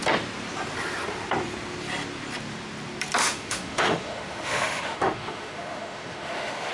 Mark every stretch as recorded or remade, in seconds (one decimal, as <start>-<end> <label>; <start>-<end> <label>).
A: 0.0-3.2 recorded; 3.2-6.7 remade